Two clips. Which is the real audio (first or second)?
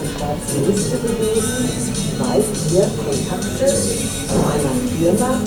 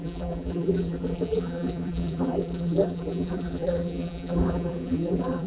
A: first